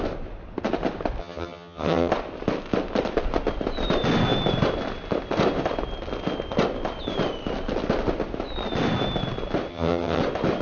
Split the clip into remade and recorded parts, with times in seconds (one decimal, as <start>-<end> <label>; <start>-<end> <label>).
0.0-1.2 recorded; 1.2-2.1 remade; 2.1-9.7 recorded; 9.7-10.2 remade; 10.2-10.6 recorded